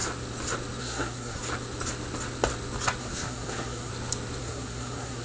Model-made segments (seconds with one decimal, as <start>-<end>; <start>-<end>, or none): 0.8-1.4; 3.0-3.9; 4.4-5.2